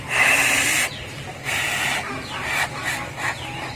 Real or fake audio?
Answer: real